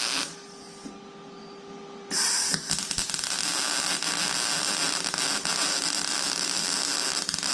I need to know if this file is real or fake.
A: real